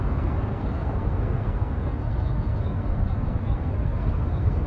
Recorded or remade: remade